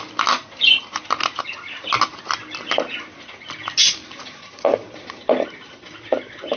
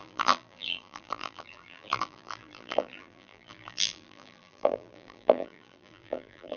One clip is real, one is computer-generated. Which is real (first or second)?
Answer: first